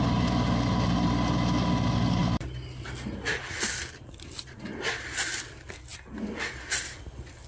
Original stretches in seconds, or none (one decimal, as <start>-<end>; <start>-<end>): 0.0-7.5